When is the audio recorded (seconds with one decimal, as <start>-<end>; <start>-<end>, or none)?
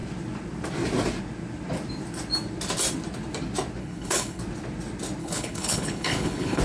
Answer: 0.0-3.8; 4.4-5.2